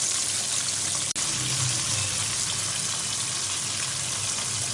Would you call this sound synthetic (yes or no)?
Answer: no